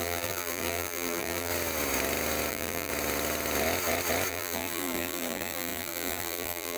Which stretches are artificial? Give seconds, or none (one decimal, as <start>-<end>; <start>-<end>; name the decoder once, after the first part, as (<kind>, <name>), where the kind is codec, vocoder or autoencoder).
0.0-1.5 (vocoder, BigVGAN v2); 2.5-2.9; 4.3-6.8